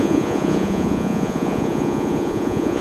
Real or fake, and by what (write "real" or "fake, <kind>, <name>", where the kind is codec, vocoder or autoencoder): fake, vocoder, Vocos